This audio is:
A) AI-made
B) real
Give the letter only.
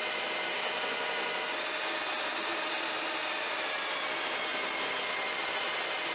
B